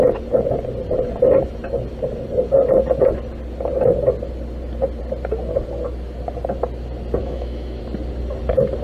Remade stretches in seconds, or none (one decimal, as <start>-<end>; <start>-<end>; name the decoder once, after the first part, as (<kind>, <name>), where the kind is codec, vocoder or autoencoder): 7.2-7.8 (autoencoder, DAC-VAE)